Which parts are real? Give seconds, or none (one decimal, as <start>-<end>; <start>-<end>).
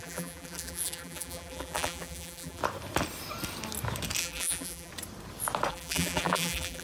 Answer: 2.6-4.2; 4.9-5.7